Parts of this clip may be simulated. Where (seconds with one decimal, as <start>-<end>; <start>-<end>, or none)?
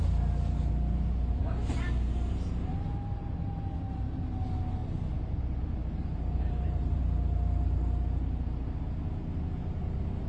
4.8-5.3; 5.8-7.0